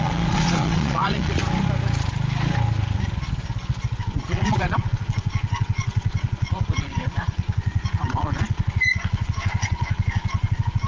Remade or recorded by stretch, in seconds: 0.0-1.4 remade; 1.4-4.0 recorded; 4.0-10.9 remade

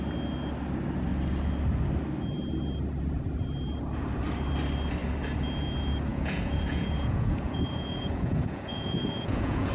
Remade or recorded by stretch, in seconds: 0.0-6.1 recorded; 6.1-9.7 remade

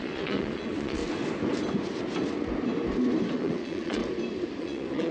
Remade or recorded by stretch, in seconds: 0.0-1.0 remade; 1.0-3.3 recorded; 3.3-4.0 remade; 4.0-4.6 recorded; 4.6-5.1 remade

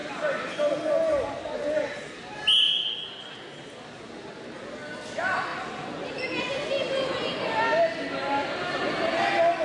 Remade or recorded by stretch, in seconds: 0.0-9.6 recorded

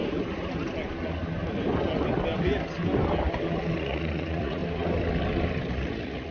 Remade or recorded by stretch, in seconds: 0.0-3.8 recorded; 3.8-4.6 remade; 4.6-5.7 recorded; 5.7-6.3 remade